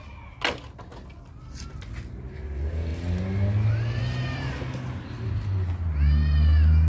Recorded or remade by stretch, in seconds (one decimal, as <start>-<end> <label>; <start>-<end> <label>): 0.0-6.9 recorded